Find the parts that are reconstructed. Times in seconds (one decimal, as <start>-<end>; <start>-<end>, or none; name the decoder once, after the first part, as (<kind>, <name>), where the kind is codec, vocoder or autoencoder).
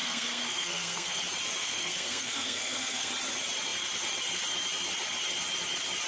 0.0-1.2 (codec, SNAC); 1.6-3.1